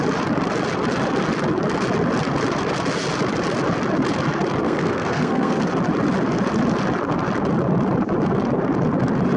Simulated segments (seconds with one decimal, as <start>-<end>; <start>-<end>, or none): 4.6-5.7